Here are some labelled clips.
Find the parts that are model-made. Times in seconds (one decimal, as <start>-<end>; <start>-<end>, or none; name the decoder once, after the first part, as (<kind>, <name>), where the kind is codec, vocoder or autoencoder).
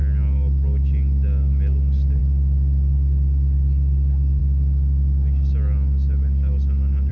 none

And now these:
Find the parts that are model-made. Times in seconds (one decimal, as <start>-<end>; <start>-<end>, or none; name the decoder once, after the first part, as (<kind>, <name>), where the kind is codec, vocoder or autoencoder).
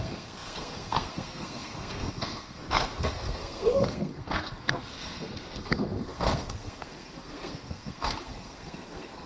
0.0-9.3 (codec, SNAC)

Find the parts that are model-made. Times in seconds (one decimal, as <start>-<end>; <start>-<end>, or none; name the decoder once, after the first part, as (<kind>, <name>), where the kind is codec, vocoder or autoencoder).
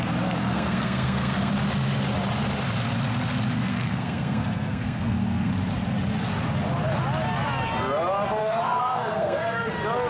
0.4-1.5 (codec, SNAC); 3.7-5.5; 8.4-9.7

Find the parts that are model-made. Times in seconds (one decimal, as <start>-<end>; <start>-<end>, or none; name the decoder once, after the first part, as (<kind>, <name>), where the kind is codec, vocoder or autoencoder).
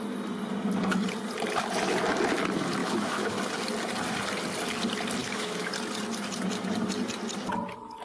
2.8-3.4 (autoencoder, DAC-VAE); 5.2-5.7